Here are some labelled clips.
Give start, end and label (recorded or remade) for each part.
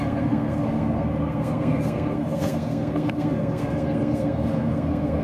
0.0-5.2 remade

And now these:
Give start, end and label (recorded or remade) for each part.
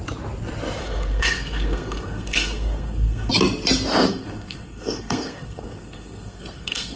0.0-0.8 recorded; 0.8-3.3 remade; 3.3-4.1 recorded; 4.1-7.0 remade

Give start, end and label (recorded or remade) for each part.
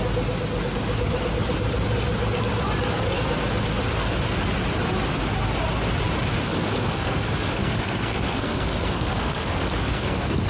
0.0-6.5 recorded; 6.5-10.5 remade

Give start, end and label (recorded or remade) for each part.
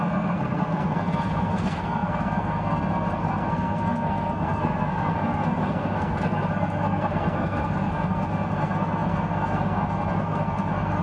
0.0-11.0 remade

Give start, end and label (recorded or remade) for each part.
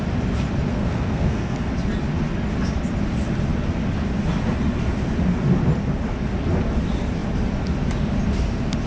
0.0-0.7 recorded; 0.7-1.7 remade; 1.7-8.9 recorded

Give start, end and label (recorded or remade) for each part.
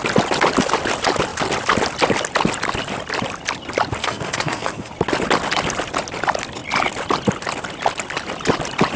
0.0-4.0 recorded; 4.0-4.9 remade; 4.9-9.0 recorded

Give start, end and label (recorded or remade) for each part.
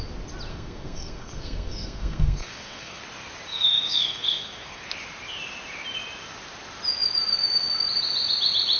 0.0-0.5 recorded; 0.5-3.0 remade; 3.0-3.5 recorded; 3.5-4.8 remade; 4.8-8.8 recorded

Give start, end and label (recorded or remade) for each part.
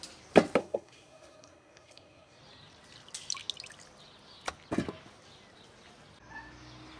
0.0-0.6 recorded; 0.6-2.4 remade; 2.4-7.0 recorded